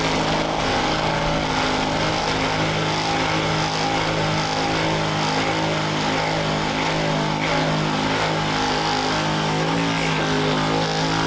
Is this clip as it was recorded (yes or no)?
yes